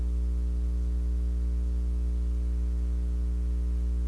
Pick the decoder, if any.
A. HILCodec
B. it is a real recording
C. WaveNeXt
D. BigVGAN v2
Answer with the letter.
B